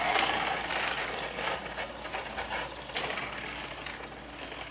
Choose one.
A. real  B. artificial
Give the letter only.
A